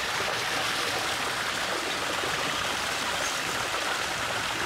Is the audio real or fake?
real